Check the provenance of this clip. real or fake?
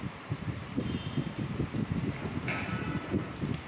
fake